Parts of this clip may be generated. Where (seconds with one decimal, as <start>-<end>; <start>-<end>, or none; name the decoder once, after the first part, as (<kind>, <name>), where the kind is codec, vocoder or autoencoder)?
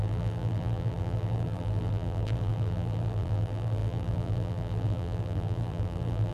0.0-6.3 (vocoder, BigVGAN v2)